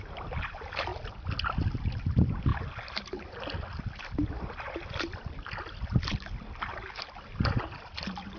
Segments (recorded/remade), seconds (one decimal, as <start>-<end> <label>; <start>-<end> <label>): 0.0-8.4 recorded